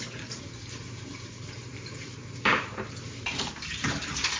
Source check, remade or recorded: remade